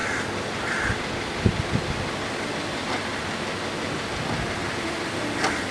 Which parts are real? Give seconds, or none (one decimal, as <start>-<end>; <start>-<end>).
0.0-4.6